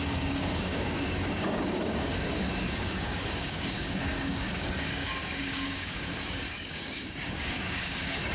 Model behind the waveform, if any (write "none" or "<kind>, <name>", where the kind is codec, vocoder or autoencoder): codec, DAC